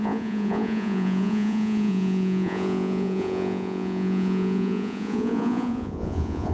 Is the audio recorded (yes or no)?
no